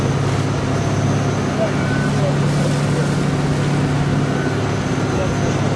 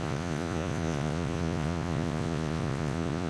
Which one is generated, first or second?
second